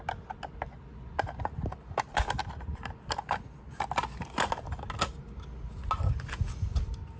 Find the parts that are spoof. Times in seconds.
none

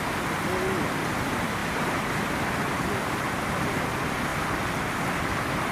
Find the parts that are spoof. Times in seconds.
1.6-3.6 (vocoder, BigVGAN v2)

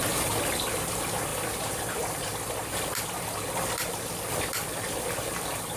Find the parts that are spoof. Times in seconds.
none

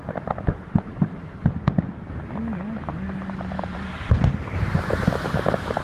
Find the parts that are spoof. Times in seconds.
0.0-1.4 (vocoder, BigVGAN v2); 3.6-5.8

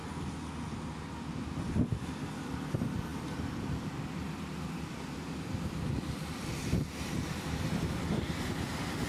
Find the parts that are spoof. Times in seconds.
1.7-9.1 (vocoder, BigVGAN v2)